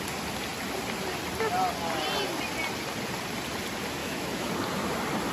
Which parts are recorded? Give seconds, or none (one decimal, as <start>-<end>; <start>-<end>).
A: 0.0-4.0; 4.5-5.3